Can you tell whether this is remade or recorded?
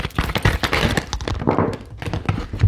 recorded